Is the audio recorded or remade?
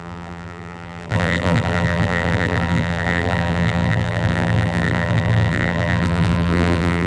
remade